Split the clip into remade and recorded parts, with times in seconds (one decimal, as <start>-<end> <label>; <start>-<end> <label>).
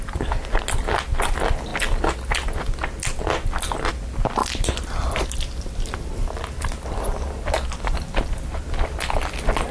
0.0-4.4 recorded; 4.4-7.5 remade; 7.5-9.7 recorded